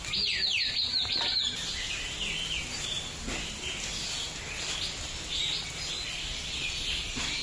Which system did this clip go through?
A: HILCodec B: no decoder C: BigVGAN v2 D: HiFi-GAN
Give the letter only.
B